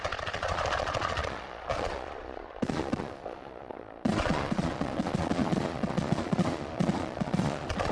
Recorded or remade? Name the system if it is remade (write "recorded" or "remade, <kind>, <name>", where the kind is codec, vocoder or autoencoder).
remade, vocoder, Vocos